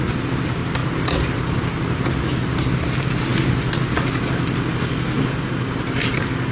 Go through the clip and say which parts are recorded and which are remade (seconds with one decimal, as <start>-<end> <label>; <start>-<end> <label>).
0.0-6.5 recorded